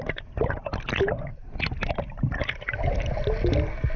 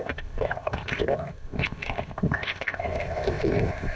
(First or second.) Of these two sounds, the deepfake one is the second